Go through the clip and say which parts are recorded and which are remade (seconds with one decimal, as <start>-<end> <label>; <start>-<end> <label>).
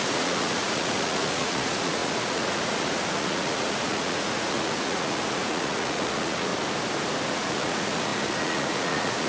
0.0-6.5 remade; 6.5-7.3 recorded; 7.3-9.3 remade